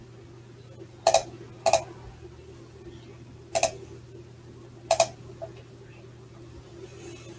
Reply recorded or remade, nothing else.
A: recorded